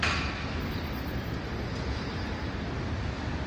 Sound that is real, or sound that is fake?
real